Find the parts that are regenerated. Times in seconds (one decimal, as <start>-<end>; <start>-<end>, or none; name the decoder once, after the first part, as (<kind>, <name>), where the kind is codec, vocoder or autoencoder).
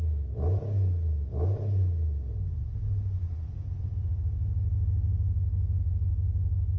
none